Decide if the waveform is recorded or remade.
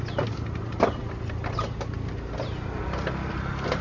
recorded